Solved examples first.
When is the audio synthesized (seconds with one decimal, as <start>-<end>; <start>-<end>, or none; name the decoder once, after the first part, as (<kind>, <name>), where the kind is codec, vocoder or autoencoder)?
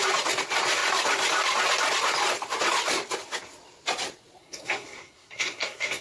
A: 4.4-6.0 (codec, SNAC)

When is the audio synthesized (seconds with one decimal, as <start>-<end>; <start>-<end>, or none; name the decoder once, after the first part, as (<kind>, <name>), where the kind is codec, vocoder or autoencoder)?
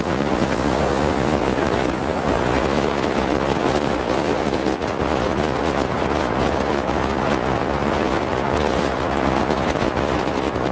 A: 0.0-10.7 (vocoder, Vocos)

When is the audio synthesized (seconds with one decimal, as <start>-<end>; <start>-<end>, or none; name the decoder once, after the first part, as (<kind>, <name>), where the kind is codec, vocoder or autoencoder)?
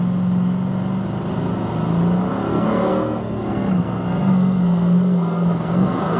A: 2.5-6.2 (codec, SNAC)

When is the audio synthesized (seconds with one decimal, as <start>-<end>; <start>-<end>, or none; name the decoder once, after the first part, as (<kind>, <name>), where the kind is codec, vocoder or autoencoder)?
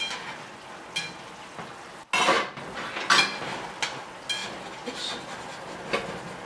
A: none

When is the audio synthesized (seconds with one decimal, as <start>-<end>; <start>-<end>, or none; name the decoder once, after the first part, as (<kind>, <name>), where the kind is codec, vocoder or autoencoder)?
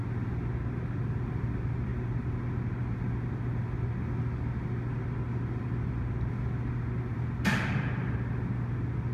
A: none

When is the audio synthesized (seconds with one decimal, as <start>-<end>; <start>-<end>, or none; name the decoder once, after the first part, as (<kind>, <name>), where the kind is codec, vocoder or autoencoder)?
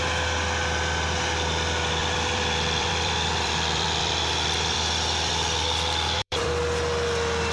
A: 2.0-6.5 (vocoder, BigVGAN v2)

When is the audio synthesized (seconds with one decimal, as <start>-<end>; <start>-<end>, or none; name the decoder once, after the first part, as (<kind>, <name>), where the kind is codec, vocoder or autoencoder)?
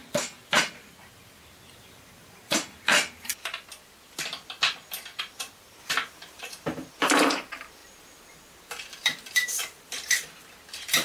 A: 1.7-2.9 (vocoder, BigVGAN v2); 5.2-11.0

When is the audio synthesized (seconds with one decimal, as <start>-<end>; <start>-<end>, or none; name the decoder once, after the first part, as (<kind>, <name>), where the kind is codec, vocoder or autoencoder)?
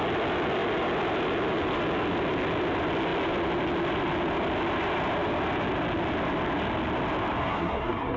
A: 7.4-8.2 (codec, SNAC)